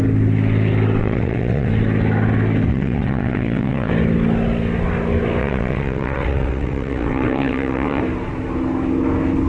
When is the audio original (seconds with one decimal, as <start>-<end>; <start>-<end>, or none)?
0.0-1.0; 1.7-2.7; 3.9-5.4; 8.0-9.5